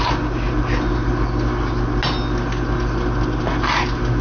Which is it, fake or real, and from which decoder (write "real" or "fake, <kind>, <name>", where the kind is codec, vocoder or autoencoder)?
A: real